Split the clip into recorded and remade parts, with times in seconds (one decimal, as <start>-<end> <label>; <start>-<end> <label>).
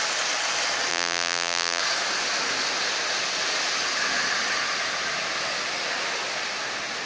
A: 0.0-0.9 recorded; 0.9-1.8 remade; 1.8-7.1 recorded